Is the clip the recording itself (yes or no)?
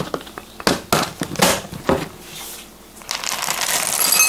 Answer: yes